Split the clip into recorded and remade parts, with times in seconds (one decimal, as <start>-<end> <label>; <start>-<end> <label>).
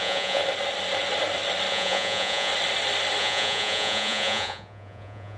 0.0-0.4 remade; 0.4-1.7 recorded; 1.7-2.5 remade; 2.5-3.2 recorded; 3.2-5.4 remade